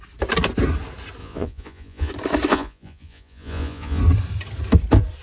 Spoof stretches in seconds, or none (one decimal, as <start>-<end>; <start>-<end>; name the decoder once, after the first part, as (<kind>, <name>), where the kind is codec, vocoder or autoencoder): 1.2-2.1 (vocoder, Vocos); 2.5-4.0